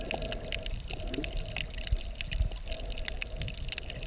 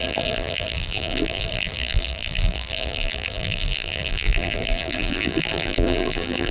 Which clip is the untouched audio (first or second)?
first